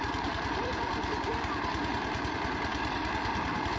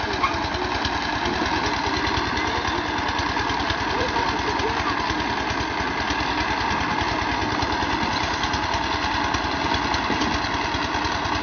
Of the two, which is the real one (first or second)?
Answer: second